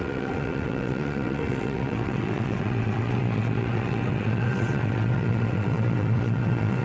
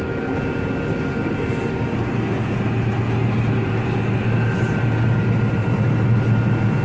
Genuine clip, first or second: second